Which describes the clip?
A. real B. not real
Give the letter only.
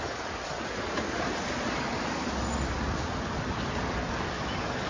A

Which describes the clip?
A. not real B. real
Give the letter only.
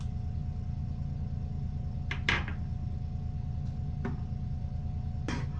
B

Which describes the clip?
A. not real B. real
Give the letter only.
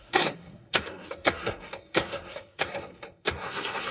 A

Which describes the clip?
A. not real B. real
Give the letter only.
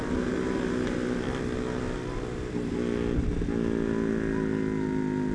B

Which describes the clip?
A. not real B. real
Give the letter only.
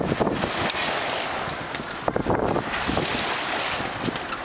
B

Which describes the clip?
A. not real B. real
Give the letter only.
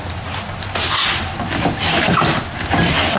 B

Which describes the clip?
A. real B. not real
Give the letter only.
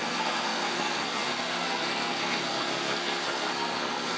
B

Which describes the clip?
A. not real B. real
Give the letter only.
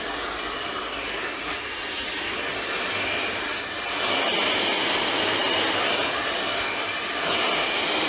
B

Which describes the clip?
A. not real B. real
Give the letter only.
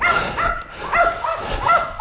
B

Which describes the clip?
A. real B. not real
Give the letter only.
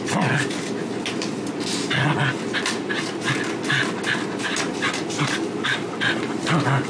A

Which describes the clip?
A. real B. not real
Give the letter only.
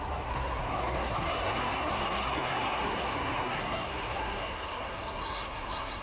B